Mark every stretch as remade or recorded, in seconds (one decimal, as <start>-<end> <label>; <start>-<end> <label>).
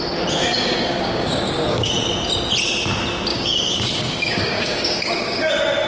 0.0-0.4 recorded; 0.4-1.9 remade; 1.9-3.3 recorded; 3.3-5.5 remade; 5.5-5.9 recorded